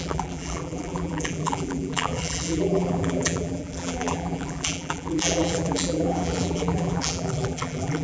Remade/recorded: remade